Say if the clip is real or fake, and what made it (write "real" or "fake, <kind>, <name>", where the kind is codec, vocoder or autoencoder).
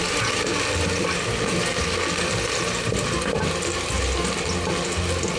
real